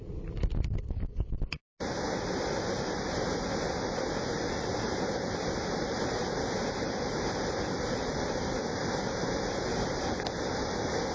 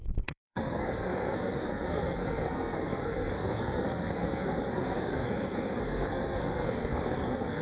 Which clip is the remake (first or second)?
second